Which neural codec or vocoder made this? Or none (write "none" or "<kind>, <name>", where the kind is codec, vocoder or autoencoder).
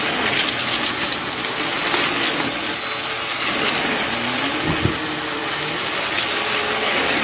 none